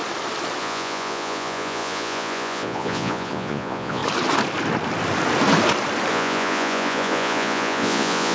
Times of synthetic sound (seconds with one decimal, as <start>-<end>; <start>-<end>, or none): 0.6-4.0; 6.1-8.3